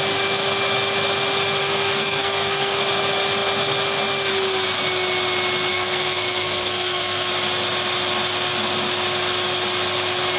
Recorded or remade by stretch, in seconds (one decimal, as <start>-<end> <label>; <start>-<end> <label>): 0.0-1.6 recorded; 1.6-2.8 remade; 2.8-5.7 recorded; 5.7-7.3 remade; 7.3-10.4 recorded